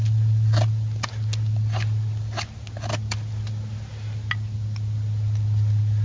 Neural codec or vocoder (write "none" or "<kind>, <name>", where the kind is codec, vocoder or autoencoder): none